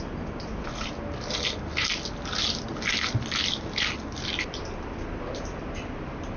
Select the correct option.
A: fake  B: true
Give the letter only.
B